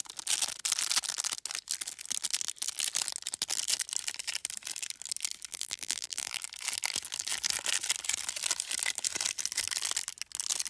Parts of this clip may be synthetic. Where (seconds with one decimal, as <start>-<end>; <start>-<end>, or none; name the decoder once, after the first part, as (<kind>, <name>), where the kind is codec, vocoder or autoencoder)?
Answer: 5.5-6.4 (vocoder, BigVGAN v2)